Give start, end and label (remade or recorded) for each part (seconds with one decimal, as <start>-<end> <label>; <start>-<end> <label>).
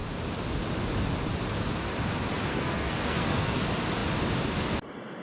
0.0-2.5 recorded; 2.5-3.6 remade; 3.6-5.2 recorded